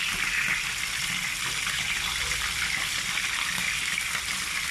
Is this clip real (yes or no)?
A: yes